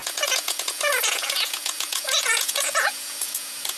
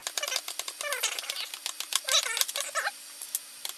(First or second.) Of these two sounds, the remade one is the first